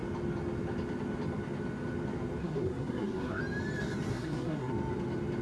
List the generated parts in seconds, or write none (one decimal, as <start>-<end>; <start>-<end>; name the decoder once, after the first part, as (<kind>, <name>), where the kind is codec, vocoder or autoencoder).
2.4-3.4 (codec, SNAC); 4.1-4.7